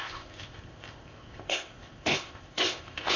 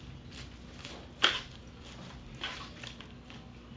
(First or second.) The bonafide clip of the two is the second